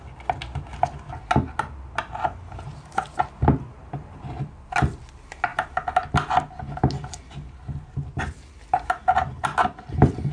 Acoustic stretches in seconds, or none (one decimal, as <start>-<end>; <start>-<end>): 0.0-10.3